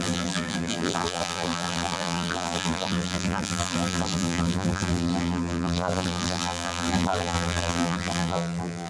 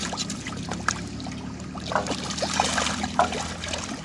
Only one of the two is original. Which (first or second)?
second